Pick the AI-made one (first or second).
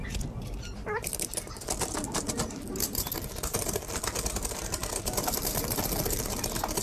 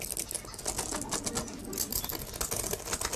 first